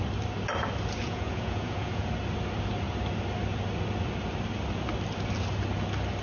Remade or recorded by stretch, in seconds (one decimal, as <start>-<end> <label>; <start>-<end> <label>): 0.0-1.0 recorded; 1.0-2.1 remade; 2.1-6.2 recorded